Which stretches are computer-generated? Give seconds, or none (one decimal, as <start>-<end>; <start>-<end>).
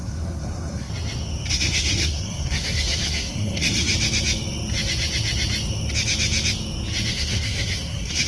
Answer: 0.0-0.9; 1.5-3.9; 7.1-8.3